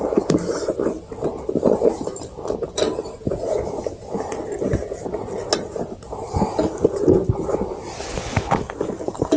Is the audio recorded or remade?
remade